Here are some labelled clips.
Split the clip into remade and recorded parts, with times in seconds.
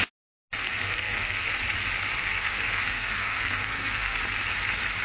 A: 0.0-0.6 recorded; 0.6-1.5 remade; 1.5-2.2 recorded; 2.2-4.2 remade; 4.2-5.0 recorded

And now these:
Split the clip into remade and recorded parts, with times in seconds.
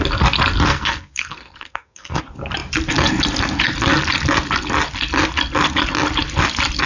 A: 0.0-0.7 recorded; 0.7-2.2 remade; 2.2-6.9 recorded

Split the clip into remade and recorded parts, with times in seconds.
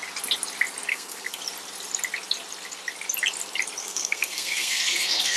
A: 0.0-0.9 recorded; 0.9-1.4 remade; 1.4-3.8 recorded; 3.8-5.4 remade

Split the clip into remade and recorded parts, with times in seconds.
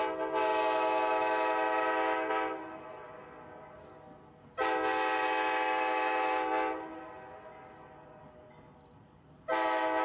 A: 0.0-10.0 recorded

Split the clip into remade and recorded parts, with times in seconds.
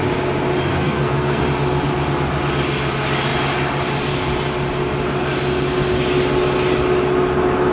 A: 0.0-0.7 recorded; 0.7-1.4 remade; 1.4-7.7 recorded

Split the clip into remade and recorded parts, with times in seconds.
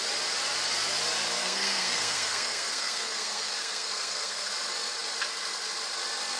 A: 0.0-1.4 recorded; 1.4-4.5 remade; 4.5-6.4 recorded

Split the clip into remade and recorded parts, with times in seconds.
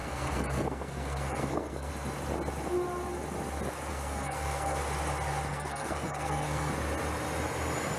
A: 0.0-1.9 remade; 1.9-3.9 recorded; 3.9-4.8 remade; 4.8-5.5 recorded; 5.5-6.7 remade; 6.7-8.0 recorded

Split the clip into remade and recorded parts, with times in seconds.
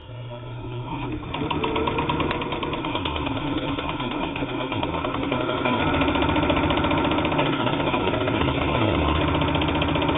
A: 0.0-1.1 remade; 1.1-2.8 recorded; 2.8-5.8 remade; 5.8-7.4 recorded; 7.4-9.2 remade; 9.2-10.2 recorded